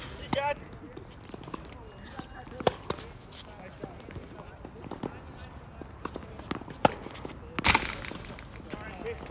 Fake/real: real